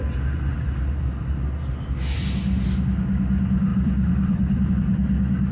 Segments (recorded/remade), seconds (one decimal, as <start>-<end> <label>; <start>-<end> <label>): 0.0-3.7 recorded; 3.7-4.7 remade; 4.7-5.5 recorded